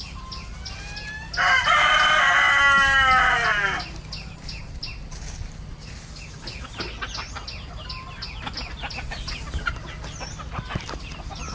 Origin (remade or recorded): recorded